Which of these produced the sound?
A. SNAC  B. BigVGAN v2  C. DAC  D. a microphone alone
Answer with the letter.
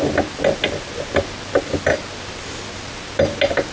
D